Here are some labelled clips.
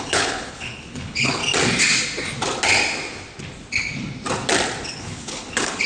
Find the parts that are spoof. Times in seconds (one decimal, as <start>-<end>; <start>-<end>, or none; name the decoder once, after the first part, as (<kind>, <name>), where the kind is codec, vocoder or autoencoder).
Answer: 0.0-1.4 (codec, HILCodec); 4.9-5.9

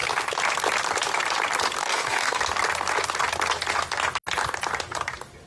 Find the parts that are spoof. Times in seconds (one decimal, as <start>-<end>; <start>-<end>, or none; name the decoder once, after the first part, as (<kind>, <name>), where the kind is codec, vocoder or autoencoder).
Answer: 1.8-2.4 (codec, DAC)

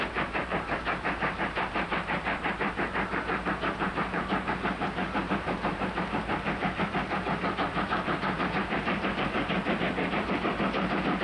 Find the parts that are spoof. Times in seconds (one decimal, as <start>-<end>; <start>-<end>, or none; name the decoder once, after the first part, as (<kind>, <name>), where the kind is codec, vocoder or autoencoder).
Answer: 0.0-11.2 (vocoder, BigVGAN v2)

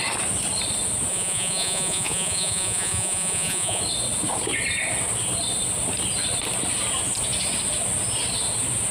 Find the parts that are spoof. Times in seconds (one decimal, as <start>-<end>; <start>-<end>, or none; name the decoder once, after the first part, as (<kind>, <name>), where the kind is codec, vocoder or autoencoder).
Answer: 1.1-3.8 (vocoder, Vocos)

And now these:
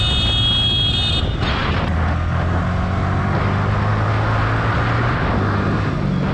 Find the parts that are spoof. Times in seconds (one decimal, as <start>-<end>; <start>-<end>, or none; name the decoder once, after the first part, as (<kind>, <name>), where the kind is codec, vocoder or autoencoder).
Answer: none